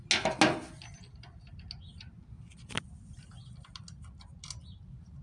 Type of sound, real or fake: real